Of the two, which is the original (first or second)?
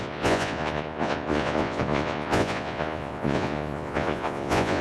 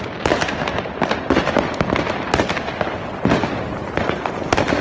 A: second